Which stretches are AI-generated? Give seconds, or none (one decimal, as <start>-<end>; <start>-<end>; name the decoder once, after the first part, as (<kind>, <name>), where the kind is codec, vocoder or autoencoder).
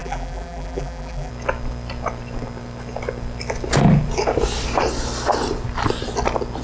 0.0-1.3 (vocoder, BigVGAN v2)